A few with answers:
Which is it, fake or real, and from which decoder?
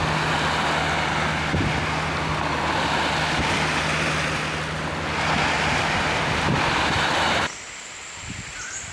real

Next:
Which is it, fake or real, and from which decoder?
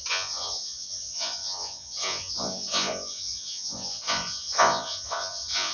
fake, vocoder, Vocos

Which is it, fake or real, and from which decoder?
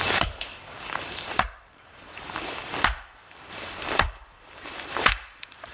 fake, vocoder, BigVGAN v2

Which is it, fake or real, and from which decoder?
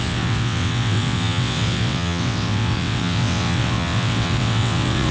fake, vocoder, WaveNeXt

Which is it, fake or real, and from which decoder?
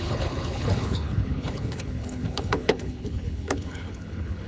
fake, codec, HILCodec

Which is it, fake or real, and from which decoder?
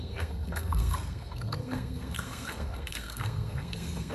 fake, codec, SNAC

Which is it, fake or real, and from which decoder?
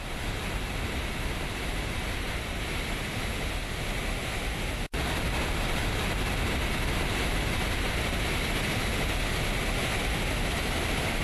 real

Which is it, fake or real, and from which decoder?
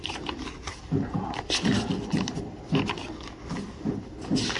real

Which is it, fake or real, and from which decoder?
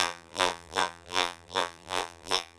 fake, vocoder, BigVGAN v2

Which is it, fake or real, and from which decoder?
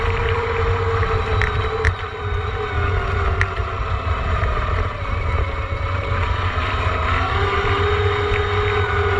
real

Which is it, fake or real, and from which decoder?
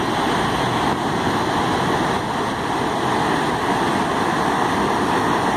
real